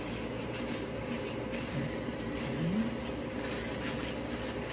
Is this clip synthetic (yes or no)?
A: yes